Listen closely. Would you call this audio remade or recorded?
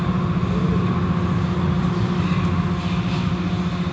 recorded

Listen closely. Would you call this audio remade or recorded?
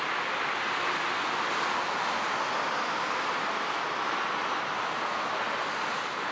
recorded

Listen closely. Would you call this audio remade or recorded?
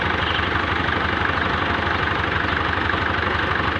recorded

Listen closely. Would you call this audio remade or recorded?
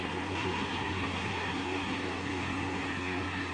remade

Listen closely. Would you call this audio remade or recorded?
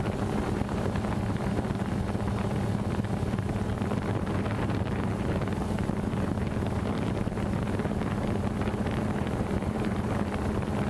remade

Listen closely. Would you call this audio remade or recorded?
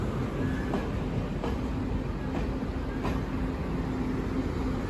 recorded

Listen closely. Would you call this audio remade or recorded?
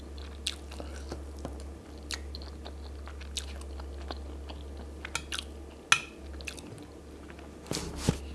recorded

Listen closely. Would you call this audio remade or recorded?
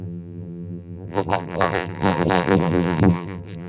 remade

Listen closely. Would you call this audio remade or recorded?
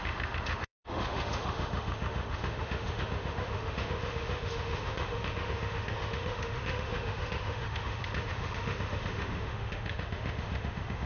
remade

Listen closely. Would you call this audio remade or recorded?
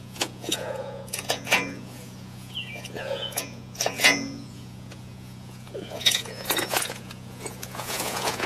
remade